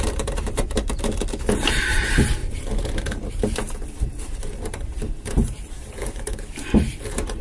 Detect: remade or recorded remade